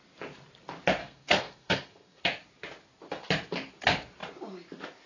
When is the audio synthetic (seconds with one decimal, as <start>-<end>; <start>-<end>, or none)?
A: 1.0-2.2